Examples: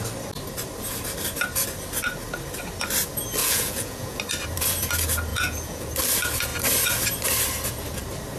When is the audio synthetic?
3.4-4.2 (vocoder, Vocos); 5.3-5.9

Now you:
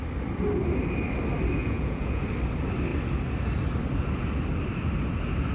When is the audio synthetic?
1.6-2.2 (vocoder, Vocos)

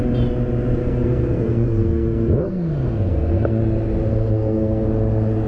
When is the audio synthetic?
0.8-3.6 (codec, SNAC); 4.1-4.8

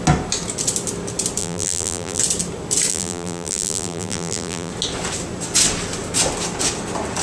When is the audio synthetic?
1.4-2.2 (vocoder, BigVGAN v2); 2.9-4.7